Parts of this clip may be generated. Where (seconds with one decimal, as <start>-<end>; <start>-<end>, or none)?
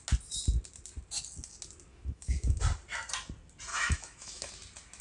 1.9-2.6; 3.7-4.5